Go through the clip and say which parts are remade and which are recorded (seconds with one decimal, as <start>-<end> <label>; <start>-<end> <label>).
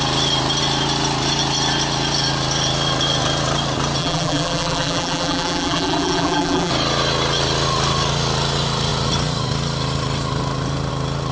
0.0-4.0 recorded; 4.0-6.7 remade; 6.7-11.3 recorded